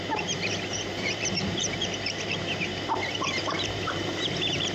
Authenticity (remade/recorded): remade